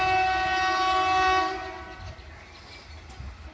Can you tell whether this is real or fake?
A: real